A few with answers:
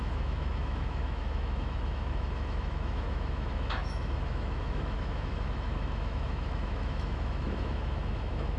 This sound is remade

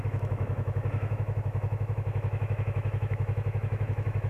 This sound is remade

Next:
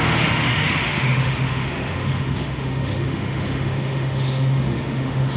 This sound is remade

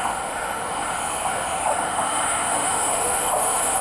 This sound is remade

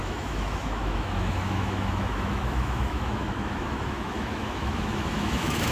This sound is remade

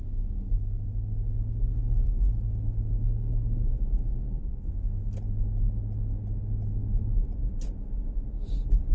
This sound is recorded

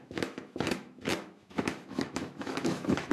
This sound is remade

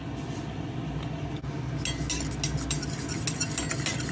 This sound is recorded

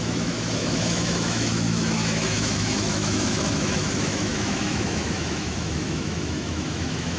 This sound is remade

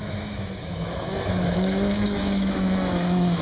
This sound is remade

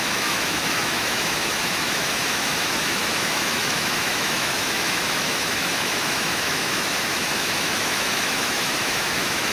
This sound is remade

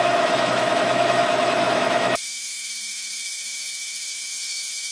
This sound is remade